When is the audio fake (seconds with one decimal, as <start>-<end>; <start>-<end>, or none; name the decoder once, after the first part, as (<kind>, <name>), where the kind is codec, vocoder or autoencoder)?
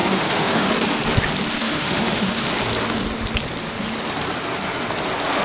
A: 0.0-0.7 (autoencoder, DAC-VAE); 1.6-2.4